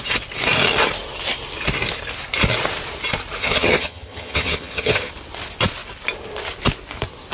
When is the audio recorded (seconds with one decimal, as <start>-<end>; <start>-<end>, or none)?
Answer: 0.0-3.4; 5.1-7.3